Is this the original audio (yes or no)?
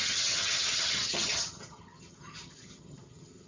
no